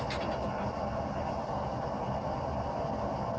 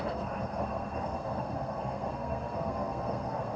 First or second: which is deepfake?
second